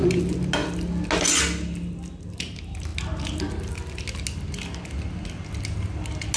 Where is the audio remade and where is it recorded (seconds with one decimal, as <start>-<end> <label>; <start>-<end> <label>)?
0.0-6.4 recorded